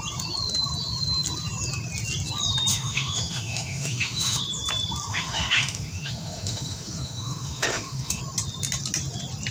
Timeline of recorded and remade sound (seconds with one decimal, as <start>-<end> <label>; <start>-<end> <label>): 0.0-2.7 recorded; 2.7-4.4 remade; 4.4-5.1 recorded; 5.1-8.2 remade; 8.2-9.5 recorded